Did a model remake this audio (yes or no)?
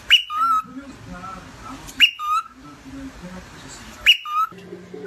no